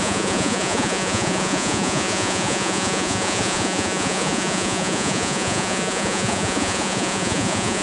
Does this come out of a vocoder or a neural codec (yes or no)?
yes